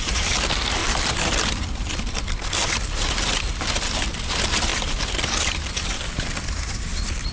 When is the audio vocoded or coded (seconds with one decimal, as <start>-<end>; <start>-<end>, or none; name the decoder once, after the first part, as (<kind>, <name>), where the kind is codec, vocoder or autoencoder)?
0.8-3.4 (vocoder, BigVGAN v2); 4.7-6.5